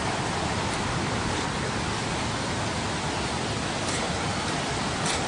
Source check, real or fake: real